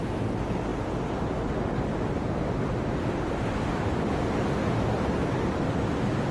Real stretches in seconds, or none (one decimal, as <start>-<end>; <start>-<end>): 0.0-6.3